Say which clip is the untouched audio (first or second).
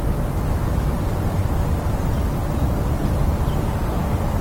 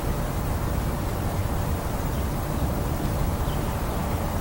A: first